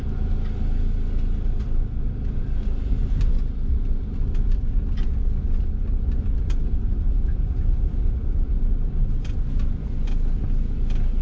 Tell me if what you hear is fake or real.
real